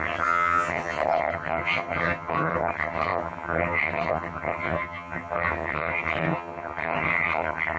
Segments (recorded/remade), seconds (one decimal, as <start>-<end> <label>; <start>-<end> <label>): 0.0-7.8 remade